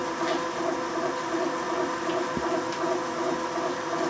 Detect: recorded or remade recorded